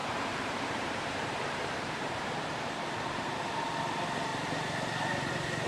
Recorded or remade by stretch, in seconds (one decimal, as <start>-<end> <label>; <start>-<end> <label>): 0.0-3.4 remade; 3.4-5.7 recorded